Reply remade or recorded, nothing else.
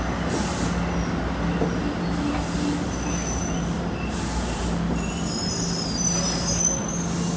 recorded